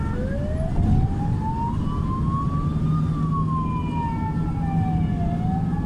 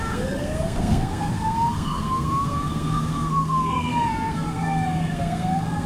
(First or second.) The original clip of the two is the first